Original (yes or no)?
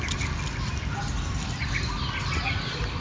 yes